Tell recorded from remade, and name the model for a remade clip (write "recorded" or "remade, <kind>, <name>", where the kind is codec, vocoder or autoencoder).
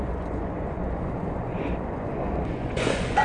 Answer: remade, vocoder, Vocos